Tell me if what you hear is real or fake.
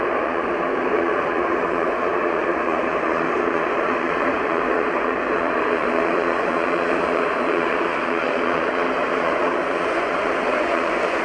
fake